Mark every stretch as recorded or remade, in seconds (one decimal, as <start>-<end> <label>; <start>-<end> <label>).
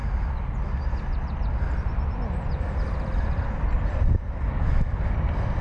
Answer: 0.0-5.6 recorded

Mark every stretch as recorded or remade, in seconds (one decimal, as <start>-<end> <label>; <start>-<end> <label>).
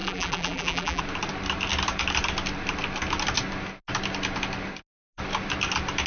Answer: 0.0-1.0 remade; 1.0-6.1 recorded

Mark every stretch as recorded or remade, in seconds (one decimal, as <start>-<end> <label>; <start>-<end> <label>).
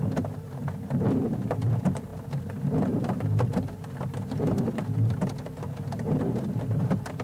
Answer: 0.0-7.2 remade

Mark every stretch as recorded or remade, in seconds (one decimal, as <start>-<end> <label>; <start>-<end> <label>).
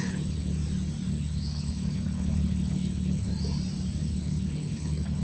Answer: 0.0-0.5 remade; 0.5-1.1 recorded; 1.1-3.3 remade; 3.3-4.0 recorded; 4.0-5.2 remade